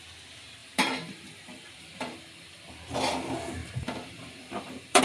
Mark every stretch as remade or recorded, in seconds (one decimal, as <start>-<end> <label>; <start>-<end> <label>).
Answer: 0.0-0.6 recorded; 0.6-2.5 remade; 2.5-3.6 recorded; 3.6-5.0 remade